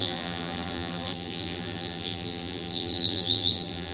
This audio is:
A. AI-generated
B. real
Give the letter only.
A